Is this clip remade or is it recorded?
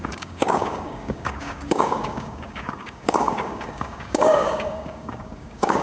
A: remade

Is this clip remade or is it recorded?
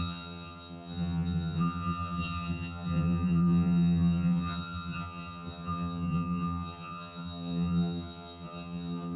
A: remade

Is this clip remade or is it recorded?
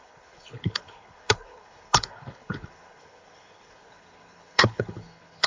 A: remade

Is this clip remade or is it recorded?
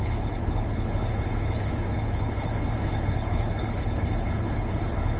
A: remade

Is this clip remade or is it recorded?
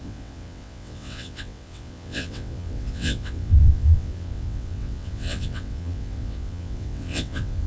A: remade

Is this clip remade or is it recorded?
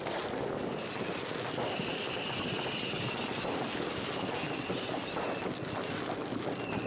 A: recorded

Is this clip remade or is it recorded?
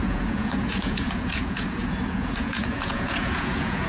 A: remade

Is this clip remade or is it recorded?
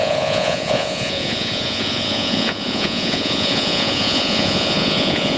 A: remade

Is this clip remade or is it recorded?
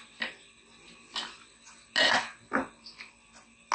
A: recorded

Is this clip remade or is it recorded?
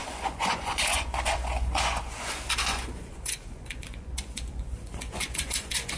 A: remade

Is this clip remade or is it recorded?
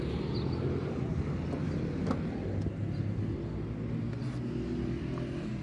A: recorded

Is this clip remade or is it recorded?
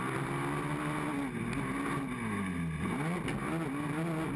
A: recorded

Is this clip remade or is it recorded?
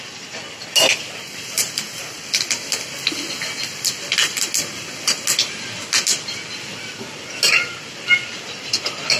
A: recorded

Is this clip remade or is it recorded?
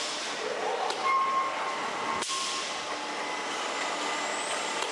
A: recorded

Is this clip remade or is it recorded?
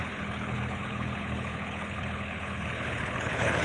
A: remade